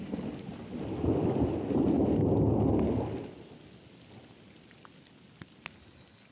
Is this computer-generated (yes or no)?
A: no